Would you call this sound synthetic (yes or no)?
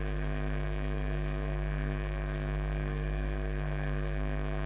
yes